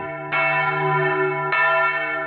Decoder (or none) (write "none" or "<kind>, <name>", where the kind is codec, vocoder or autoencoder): none